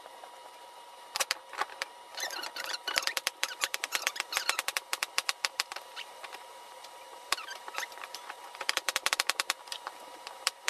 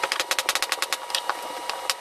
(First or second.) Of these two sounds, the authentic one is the second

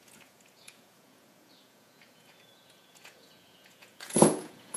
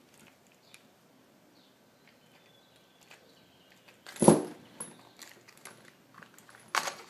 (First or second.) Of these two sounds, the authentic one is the second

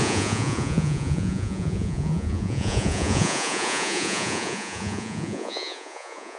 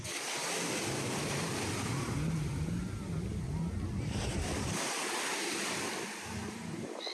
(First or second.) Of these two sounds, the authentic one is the second